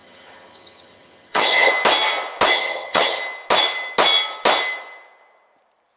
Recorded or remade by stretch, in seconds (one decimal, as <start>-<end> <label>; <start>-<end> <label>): 0.0-1.7 remade; 1.7-2.5 recorded; 2.5-3.2 remade; 3.2-6.0 recorded